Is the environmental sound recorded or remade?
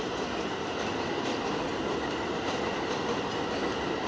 recorded